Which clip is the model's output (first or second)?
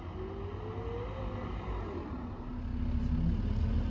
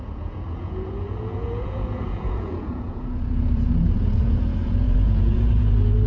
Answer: second